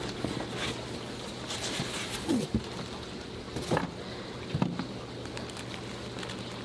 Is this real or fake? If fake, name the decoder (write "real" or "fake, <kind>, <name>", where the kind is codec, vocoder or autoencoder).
real